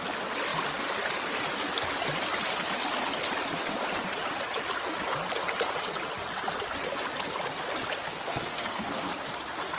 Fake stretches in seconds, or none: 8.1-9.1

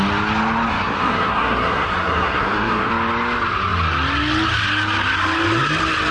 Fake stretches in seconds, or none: 0.7-2.9

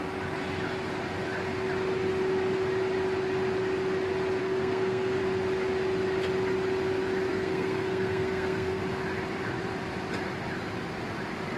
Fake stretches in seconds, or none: 4.4-5.2; 7.3-8.8